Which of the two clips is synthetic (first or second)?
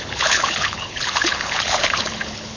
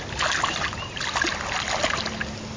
first